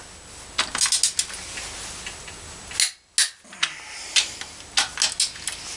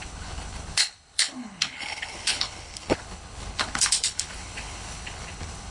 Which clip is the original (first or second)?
first